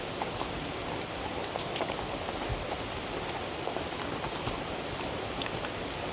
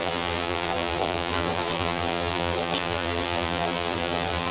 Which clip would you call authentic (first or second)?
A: first